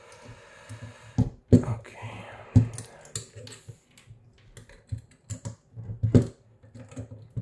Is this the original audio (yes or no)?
yes